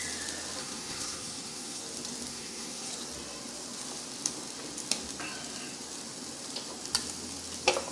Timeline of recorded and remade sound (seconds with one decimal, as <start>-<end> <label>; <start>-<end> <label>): 0.0-0.6 recorded; 0.6-1.8 remade; 1.8-2.3 recorded; 2.3-2.9 remade; 2.9-7.9 recorded